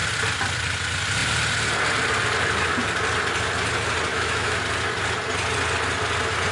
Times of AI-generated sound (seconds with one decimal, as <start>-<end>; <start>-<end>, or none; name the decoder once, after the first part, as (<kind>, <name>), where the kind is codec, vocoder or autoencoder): 4.1-4.6 (autoencoder, DAC-VAE)